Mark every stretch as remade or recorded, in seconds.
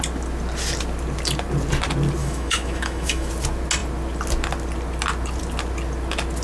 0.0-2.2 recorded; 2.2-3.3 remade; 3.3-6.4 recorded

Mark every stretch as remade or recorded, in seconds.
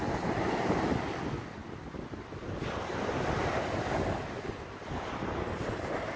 0.0-6.2 recorded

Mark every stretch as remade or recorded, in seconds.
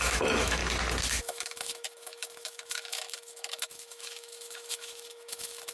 0.0-0.6 remade; 0.6-1.2 recorded; 1.2-5.7 remade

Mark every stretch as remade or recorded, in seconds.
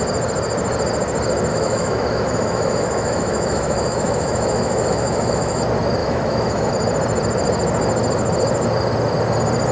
0.0-1.5 recorded; 1.5-5.6 remade; 5.6-6.0 recorded; 6.0-6.7 remade; 6.7-9.7 recorded